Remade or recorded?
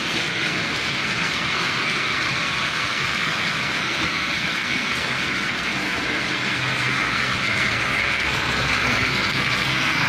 remade